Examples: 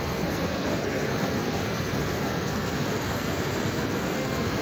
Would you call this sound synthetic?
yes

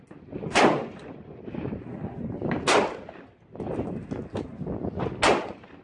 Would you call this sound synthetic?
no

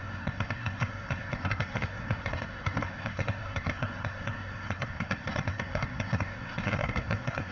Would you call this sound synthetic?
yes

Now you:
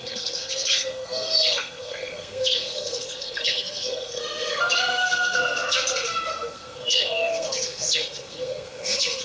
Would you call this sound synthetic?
yes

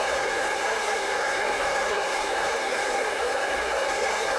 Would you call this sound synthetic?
yes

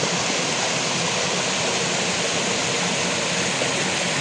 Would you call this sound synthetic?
no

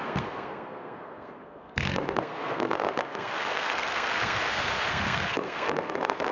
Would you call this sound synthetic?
yes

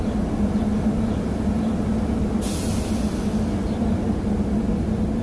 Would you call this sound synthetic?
no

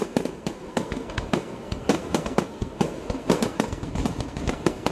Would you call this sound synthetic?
yes